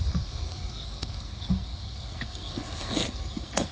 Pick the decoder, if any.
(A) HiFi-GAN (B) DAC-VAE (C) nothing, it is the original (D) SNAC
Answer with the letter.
D